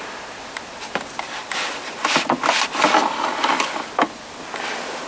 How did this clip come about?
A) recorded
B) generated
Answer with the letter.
A